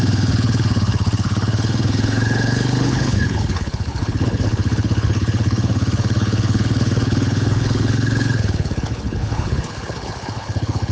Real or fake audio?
fake